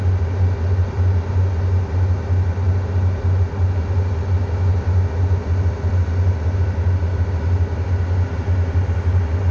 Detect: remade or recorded recorded